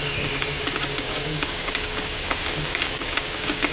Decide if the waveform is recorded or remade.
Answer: remade